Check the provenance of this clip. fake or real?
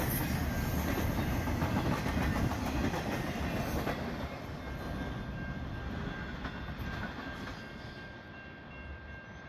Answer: real